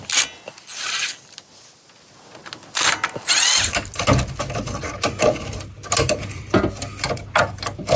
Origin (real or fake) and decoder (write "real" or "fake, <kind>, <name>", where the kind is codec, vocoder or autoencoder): real